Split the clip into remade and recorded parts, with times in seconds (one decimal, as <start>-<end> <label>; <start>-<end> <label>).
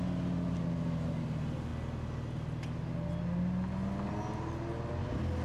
0.0-5.4 recorded